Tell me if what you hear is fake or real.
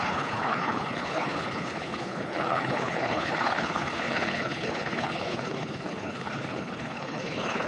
fake